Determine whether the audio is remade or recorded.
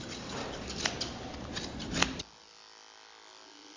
recorded